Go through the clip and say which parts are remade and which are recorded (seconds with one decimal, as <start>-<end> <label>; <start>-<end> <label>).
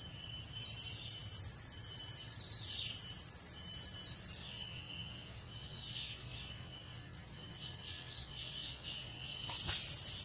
0.0-4.4 recorded; 4.4-9.5 remade; 9.5-10.2 recorded